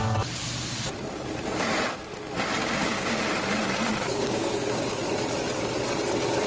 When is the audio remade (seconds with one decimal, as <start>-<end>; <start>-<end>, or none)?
2.6-3.2; 3.9-5.0